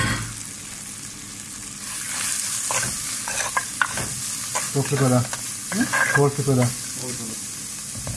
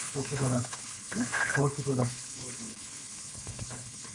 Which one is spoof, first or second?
second